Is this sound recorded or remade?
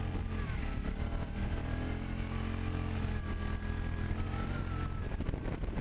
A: recorded